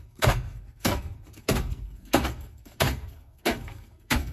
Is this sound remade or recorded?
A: remade